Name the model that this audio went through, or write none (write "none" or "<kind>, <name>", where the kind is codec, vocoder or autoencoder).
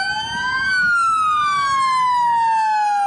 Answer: none